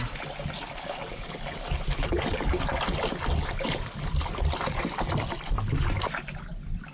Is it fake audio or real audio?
real